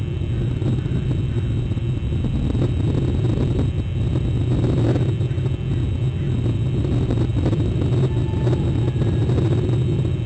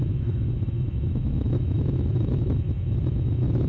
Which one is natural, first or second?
first